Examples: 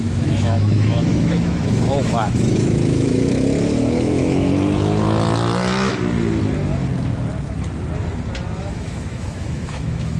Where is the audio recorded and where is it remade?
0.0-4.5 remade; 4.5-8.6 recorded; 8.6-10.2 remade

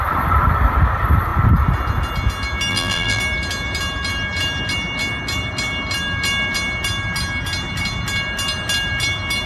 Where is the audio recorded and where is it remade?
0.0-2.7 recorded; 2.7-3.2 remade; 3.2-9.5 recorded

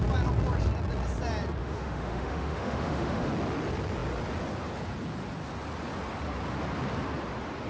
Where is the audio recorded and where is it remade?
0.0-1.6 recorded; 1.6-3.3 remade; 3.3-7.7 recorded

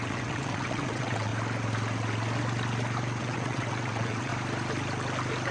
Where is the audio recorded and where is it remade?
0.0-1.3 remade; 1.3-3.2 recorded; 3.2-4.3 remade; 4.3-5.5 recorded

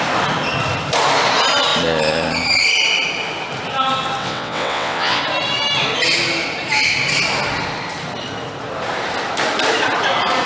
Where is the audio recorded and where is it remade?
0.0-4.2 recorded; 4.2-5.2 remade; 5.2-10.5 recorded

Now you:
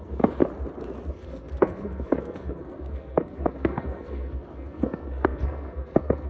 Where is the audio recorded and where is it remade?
0.0-0.4 remade; 0.4-1.1 recorded; 1.1-6.3 remade